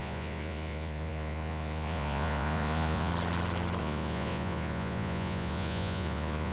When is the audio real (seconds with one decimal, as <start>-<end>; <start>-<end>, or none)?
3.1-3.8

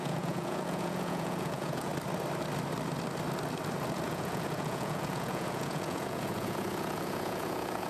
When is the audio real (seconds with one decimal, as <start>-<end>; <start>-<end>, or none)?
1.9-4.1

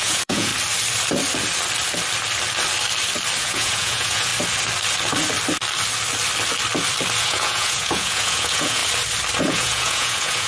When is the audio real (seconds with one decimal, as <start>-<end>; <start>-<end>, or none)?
0.5-3.4; 4.3-7.2; 8.8-9.4

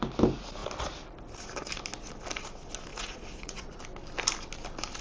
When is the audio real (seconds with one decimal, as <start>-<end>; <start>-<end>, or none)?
0.0-2.9; 3.8-5.0

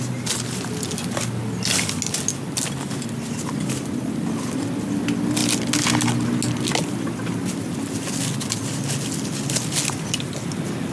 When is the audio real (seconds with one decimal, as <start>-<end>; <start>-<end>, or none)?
0.0-10.9

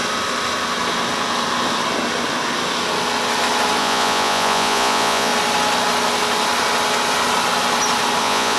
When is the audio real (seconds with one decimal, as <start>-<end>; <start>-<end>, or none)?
0.0-3.8; 5.3-8.2